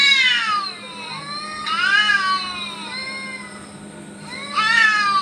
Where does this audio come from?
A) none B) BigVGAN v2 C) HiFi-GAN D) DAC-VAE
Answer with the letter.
A